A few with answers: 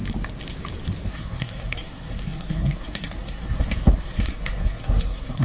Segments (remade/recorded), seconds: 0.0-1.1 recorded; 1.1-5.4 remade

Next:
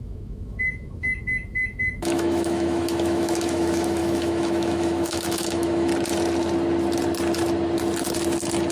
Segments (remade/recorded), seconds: 0.0-5.9 remade; 5.9-8.7 recorded

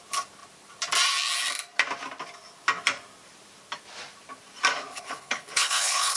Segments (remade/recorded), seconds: 0.0-4.9 recorded; 4.9-6.2 remade

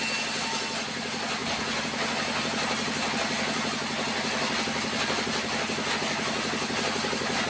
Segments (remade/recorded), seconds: 0.0-7.5 recorded

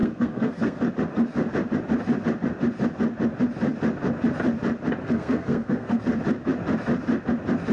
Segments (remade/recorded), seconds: 0.0-0.9 remade; 0.9-5.0 recorded; 5.0-6.0 remade; 6.0-7.7 recorded